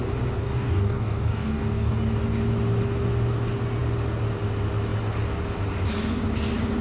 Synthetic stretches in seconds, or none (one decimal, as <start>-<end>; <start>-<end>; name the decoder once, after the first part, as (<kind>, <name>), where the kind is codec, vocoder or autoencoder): 0.4-1.9 (codec, DAC)